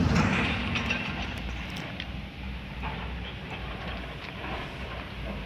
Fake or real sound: fake